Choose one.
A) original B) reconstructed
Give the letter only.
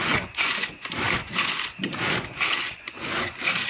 B